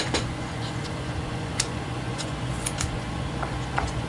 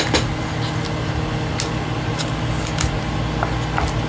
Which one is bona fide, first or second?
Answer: second